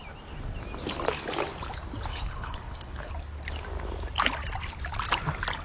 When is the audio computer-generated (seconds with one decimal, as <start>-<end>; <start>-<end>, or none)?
2.1-3.1